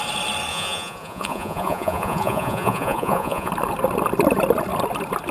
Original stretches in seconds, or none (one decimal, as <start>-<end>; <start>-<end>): 0.0-0.5; 3.5-5.3